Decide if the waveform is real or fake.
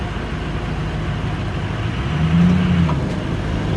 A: real